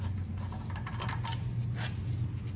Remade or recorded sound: recorded